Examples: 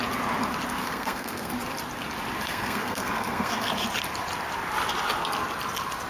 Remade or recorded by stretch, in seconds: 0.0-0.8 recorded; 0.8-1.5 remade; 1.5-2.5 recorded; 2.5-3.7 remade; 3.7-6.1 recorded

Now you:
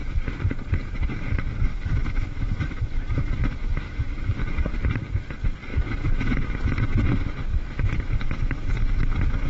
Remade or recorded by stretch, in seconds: 0.0-1.7 recorded; 1.7-4.7 remade; 4.7-5.7 recorded; 5.7-7.1 remade; 7.1-7.5 recorded; 7.5-8.7 remade; 8.7-9.5 recorded

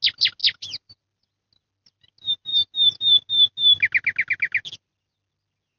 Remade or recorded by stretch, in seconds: 0.0-5.8 recorded